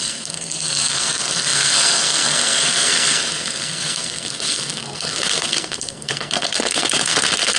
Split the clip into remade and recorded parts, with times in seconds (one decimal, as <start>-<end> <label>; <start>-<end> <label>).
0.0-7.6 remade